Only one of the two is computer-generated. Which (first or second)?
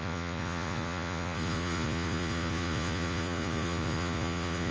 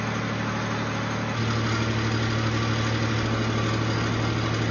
first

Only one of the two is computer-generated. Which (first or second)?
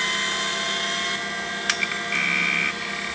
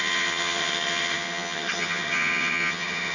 second